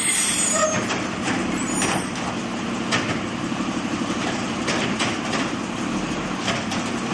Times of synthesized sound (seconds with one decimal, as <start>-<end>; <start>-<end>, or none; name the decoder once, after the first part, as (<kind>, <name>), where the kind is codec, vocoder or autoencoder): none